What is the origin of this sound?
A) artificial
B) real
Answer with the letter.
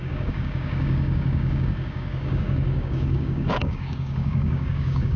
A